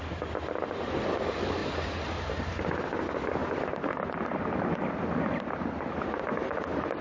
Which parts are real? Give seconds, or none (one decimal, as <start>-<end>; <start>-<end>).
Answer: 0.0-7.0